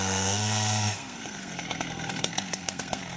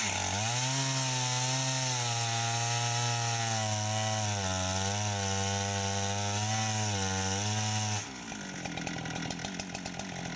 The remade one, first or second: first